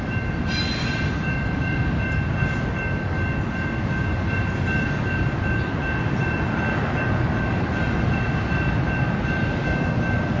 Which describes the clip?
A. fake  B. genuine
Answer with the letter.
B